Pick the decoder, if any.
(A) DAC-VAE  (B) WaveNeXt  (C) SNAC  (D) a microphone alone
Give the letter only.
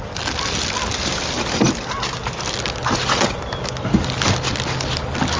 D